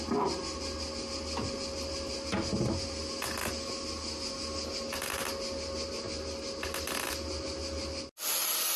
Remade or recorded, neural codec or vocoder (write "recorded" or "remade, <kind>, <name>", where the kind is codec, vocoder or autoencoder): recorded